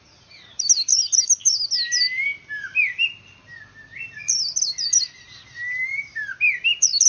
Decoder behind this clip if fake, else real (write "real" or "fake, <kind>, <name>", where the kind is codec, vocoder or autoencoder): real